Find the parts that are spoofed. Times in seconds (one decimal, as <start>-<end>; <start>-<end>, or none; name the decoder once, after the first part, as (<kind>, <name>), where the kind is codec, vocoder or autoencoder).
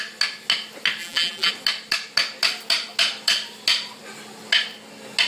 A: 1.0-1.5 (vocoder, BigVGAN v2)